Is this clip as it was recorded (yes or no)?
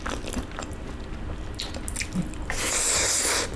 yes